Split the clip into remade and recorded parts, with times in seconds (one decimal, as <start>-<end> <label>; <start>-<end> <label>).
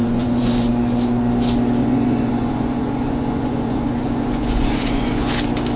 0.0-0.7 remade; 0.7-1.8 recorded; 1.8-5.3 remade; 5.3-5.8 recorded